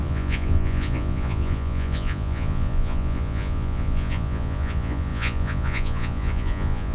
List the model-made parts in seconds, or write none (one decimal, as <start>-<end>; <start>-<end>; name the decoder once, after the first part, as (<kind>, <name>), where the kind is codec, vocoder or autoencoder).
0.0-6.9 (vocoder, Vocos)